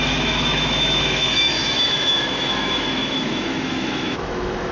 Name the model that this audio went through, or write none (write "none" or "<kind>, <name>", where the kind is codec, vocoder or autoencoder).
autoencoder, DAC-VAE